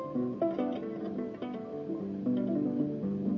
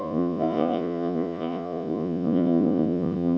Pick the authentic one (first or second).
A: first